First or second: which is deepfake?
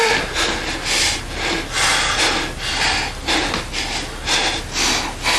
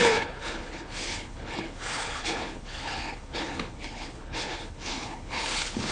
second